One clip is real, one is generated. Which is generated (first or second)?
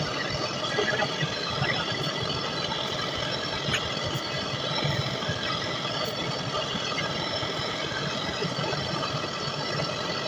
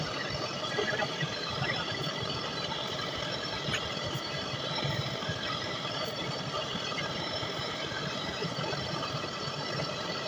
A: second